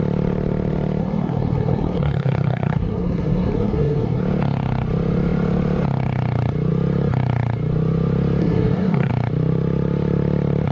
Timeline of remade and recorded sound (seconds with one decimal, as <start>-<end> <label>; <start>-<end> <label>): 0.0-1.0 recorded; 1.0-4.2 remade; 4.2-8.4 recorded; 8.4-9.1 remade; 9.1-10.7 recorded